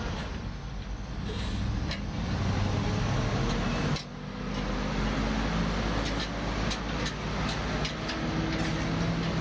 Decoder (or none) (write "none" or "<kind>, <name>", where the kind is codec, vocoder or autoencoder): none